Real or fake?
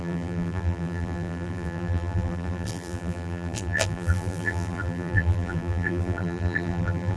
fake